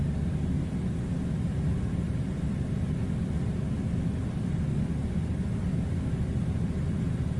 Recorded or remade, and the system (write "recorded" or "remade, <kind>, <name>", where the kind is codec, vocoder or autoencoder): recorded